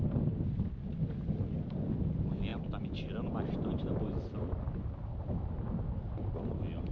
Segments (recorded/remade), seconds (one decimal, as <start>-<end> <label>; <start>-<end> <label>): 0.0-6.9 recorded